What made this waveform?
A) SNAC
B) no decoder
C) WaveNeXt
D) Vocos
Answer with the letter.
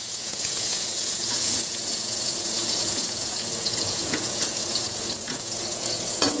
D